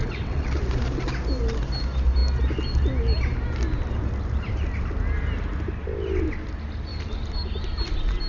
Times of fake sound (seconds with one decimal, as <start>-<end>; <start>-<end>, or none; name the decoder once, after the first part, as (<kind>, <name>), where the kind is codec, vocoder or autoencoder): 0.0-0.6 (vocoder, WaveNeXt)